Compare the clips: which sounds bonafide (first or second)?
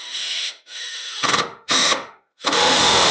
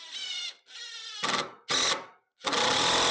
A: second